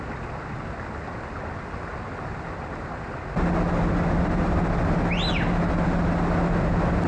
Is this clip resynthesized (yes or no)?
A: no